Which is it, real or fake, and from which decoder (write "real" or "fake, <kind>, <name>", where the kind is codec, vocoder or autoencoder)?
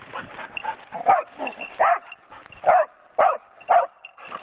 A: real